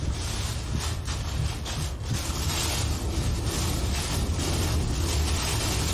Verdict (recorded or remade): recorded